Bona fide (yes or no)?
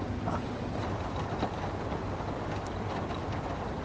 no